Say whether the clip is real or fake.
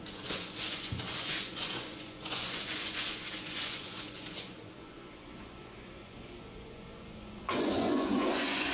fake